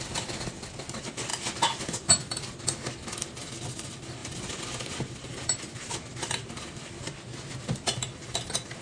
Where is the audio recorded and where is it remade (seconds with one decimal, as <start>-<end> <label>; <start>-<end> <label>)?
0.0-8.8 recorded